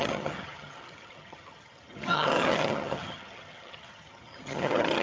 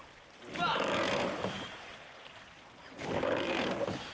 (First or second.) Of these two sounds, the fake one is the first